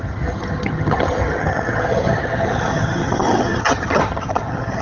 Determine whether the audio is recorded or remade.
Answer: remade